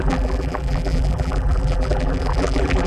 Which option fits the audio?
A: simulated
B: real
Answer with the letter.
A